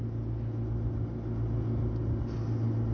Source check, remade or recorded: recorded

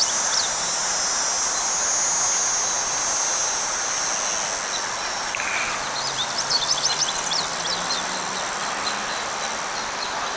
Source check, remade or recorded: recorded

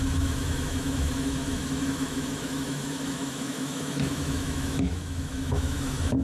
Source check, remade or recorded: remade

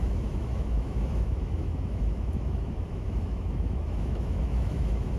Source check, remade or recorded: remade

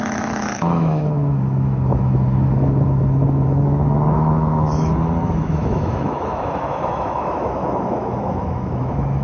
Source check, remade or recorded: remade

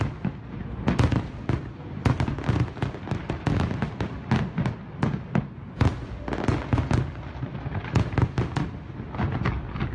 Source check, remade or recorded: recorded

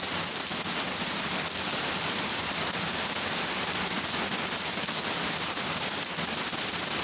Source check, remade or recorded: recorded